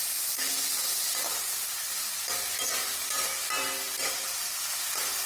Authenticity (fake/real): real